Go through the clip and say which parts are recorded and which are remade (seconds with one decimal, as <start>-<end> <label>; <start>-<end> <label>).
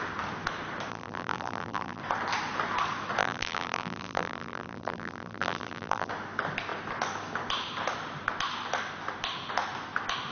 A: 0.0-0.9 recorded; 0.9-2.0 remade; 2.0-3.2 recorded; 3.2-6.1 remade; 6.1-10.3 recorded